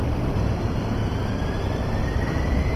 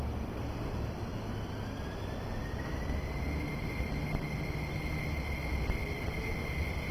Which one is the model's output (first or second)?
first